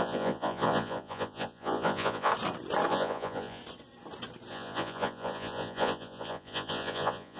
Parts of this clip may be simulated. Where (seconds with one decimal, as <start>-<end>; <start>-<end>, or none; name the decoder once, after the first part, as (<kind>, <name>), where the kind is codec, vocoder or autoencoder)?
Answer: 0.0-2.3 (vocoder, Vocos); 2.9-3.6; 4.5-7.4